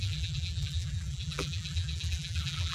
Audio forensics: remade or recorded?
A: remade